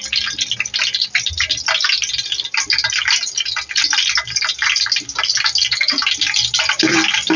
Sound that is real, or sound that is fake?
real